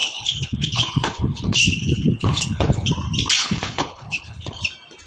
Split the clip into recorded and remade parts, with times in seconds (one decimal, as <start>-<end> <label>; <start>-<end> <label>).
0.0-2.9 remade; 2.9-3.4 recorded; 3.4-4.6 remade; 4.6-5.1 recorded